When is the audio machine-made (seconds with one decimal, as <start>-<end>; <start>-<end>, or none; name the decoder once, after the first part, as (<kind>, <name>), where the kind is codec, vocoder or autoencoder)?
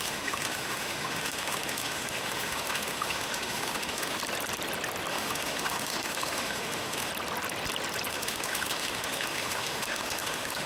0.0-4.2 (autoencoder, DAC-VAE); 5.1-7.1; 8.1-10.7